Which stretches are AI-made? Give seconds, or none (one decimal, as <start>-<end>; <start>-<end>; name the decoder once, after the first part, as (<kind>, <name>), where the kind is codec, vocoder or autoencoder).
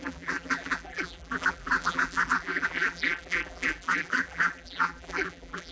0.0-5.7 (vocoder, BigVGAN v2)